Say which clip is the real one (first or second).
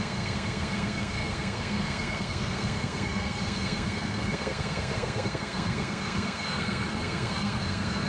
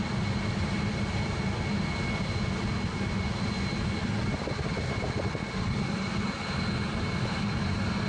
second